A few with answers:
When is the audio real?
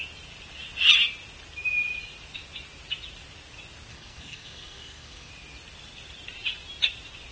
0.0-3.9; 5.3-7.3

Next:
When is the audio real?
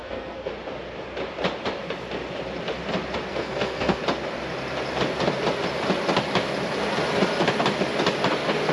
0.5-3.3; 4.0-8.7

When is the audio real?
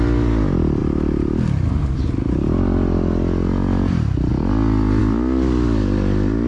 0.0-6.5